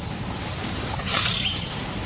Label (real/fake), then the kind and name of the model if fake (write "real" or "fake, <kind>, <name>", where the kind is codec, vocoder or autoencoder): fake, vocoder, BigVGAN v2